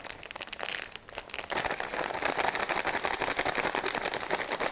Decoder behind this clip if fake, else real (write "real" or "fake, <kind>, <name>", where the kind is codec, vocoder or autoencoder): real